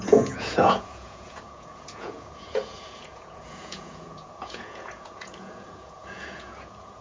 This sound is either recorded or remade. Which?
remade